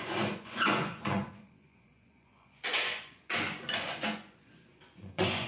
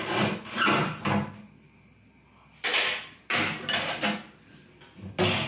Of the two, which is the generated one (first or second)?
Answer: first